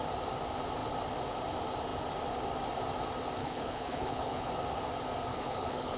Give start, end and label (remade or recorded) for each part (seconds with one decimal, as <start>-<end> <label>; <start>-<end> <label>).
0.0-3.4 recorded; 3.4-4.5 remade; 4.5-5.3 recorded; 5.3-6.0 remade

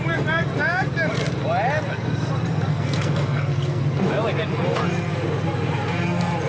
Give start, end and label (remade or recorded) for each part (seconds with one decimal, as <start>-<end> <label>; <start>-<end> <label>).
0.0-2.7 recorded; 2.7-3.8 remade; 3.8-6.5 recorded

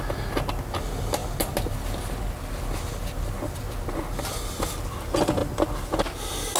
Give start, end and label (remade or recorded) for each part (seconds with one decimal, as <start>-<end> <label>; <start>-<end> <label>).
0.0-6.6 recorded

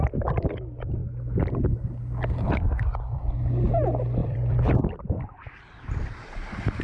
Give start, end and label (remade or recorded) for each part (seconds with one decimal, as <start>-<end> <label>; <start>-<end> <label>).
0.0-4.2 recorded; 4.2-4.9 remade; 4.9-6.8 recorded

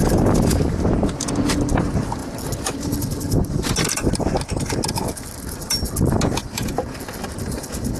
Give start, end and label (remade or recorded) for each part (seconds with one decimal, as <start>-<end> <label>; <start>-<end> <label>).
0.0-8.0 recorded